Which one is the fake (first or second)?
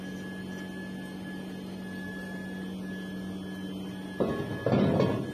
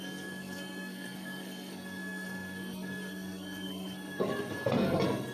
second